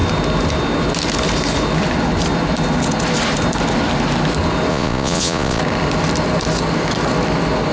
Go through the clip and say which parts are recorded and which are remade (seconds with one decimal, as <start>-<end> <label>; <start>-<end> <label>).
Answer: 0.0-4.7 recorded; 4.7-5.6 remade; 5.6-7.7 recorded